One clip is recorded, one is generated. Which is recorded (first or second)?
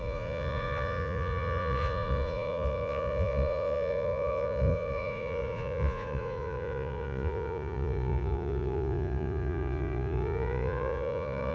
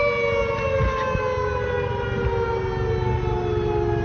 second